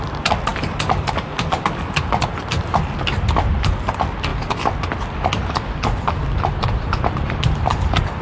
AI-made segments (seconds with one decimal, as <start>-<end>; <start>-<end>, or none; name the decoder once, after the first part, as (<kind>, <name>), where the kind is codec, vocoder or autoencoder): 0.5-2.6 (vocoder, BigVGAN v2)